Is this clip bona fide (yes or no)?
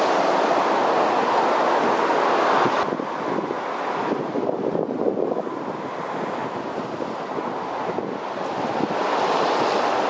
yes